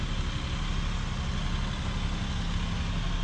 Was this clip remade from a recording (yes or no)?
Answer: no